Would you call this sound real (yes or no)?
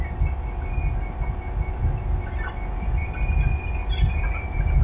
yes